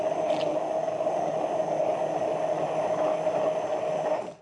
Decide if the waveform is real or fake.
real